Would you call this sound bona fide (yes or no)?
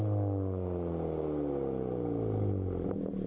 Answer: yes